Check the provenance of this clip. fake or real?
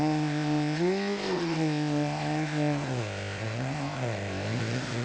fake